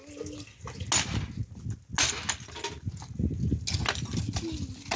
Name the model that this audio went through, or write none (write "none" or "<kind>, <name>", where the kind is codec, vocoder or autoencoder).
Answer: none